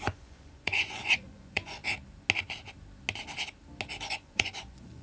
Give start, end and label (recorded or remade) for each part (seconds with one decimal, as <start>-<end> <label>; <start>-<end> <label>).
0.0-1.8 remade; 1.8-4.1 recorded; 4.1-5.0 remade